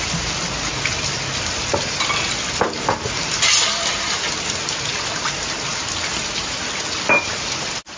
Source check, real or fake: fake